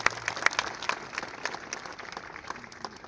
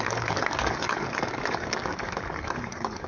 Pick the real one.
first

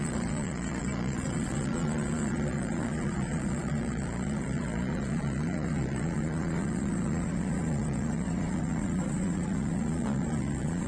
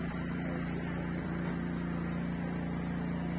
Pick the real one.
second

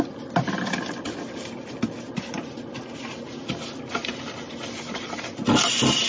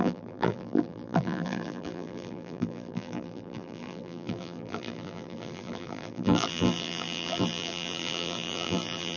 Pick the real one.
first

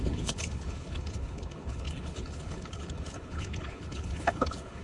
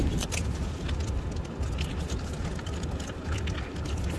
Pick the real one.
second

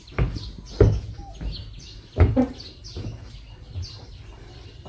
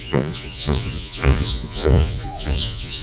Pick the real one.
first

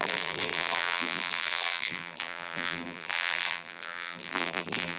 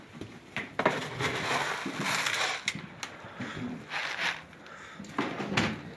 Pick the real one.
second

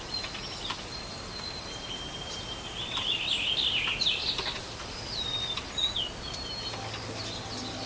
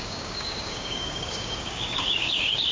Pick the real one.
first